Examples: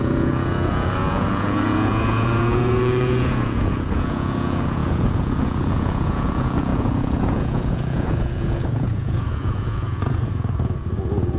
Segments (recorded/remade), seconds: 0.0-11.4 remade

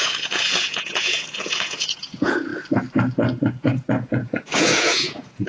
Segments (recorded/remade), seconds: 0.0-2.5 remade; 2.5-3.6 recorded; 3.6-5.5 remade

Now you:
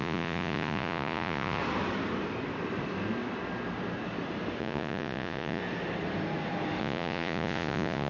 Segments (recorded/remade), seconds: 0.0-1.6 remade; 1.6-4.6 recorded; 4.6-5.6 remade; 5.6-6.8 recorded; 6.8-8.1 remade

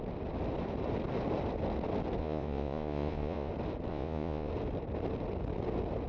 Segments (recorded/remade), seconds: 0.0-2.2 recorded; 2.2-3.5 remade; 3.5-3.9 recorded; 3.9-4.5 remade; 4.5-6.1 recorded

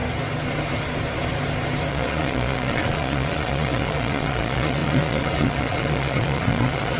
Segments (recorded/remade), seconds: 0.0-1.9 recorded; 1.9-7.0 remade